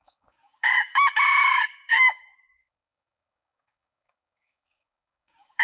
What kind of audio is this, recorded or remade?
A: remade